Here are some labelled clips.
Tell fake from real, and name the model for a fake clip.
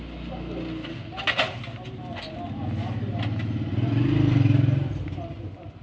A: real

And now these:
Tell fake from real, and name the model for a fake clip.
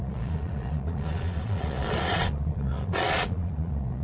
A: fake, vocoder, Vocos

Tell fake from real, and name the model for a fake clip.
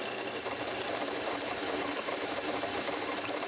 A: fake, vocoder, BigVGAN v2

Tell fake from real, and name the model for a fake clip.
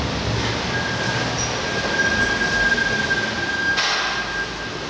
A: real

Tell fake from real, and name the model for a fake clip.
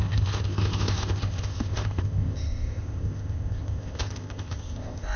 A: fake, codec, ZipCodec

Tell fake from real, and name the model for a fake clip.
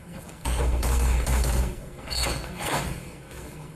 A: fake, codec, SNAC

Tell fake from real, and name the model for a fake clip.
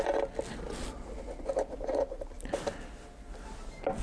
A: real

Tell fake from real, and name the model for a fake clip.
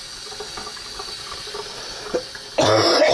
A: real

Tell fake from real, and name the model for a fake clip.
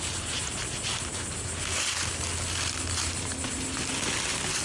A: real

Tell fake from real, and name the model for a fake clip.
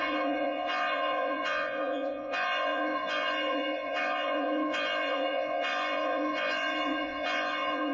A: fake, vocoder, Vocos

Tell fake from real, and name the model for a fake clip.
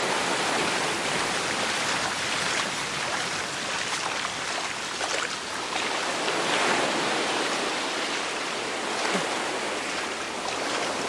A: real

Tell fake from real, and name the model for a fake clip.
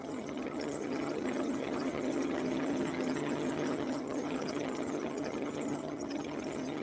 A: fake, vocoder, HiFi-GAN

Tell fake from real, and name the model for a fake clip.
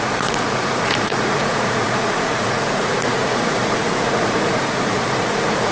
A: fake, vocoder, Vocos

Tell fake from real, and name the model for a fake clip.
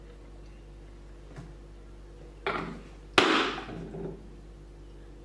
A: real